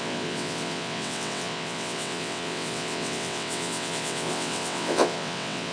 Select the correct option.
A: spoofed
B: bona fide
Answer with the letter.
A